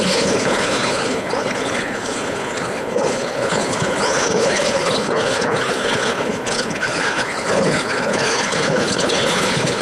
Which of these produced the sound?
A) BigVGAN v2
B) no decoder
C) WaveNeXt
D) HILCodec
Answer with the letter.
D